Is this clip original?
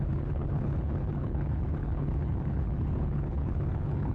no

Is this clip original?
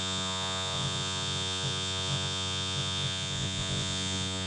no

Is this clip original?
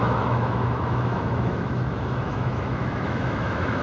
no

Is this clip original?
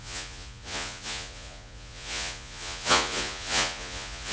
no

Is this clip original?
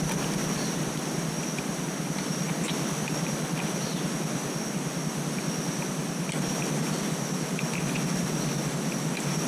yes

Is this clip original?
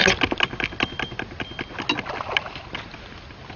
yes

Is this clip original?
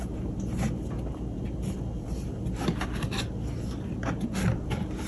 yes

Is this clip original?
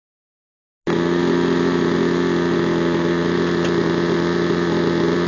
yes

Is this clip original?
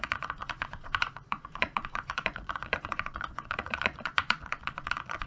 no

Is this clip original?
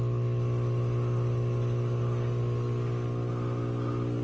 yes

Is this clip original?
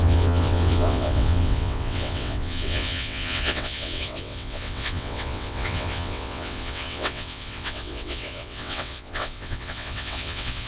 no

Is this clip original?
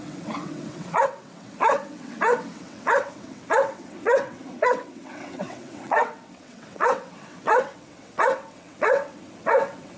no